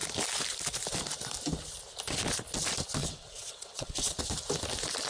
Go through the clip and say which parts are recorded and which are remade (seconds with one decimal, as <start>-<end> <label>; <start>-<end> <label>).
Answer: 0.0-3.0 recorded; 3.0-4.2 remade; 4.2-5.1 recorded